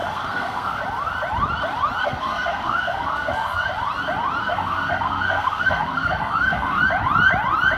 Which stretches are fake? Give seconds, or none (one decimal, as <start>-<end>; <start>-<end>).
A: 0.0-0.8; 2.0-3.7; 4.4-6.8